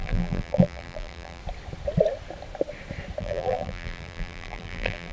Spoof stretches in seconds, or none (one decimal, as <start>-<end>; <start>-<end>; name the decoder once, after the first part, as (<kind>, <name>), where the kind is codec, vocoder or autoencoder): 0.0-1.4 (vocoder, BigVGAN v2); 3.2-5.1